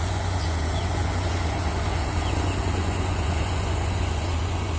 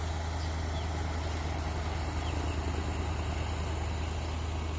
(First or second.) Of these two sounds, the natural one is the second